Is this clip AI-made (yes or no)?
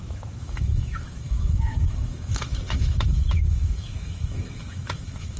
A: yes